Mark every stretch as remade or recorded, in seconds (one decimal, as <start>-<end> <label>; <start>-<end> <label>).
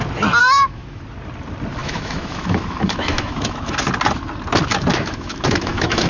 0.0-0.4 recorded; 0.4-1.0 remade; 1.0-1.8 recorded; 1.8-3.7 remade; 3.7-4.9 recorded; 4.9-6.1 remade